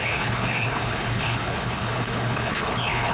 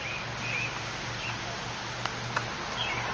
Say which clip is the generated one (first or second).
first